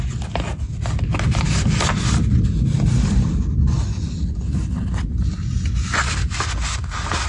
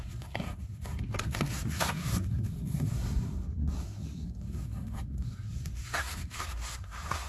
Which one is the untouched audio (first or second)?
first